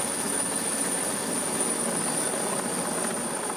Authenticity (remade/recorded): recorded